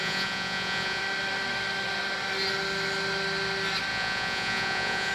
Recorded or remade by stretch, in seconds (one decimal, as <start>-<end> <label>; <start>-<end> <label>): 0.0-1.0 remade; 1.0-3.9 recorded; 3.9-5.1 remade